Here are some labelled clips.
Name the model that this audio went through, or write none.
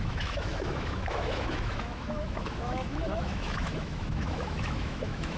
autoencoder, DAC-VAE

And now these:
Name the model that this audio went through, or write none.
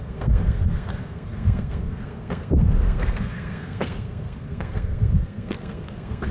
codec, SNAC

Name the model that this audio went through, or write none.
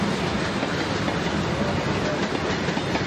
none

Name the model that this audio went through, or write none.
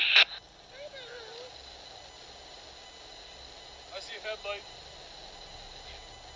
none